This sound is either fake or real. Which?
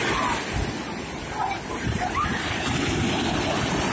real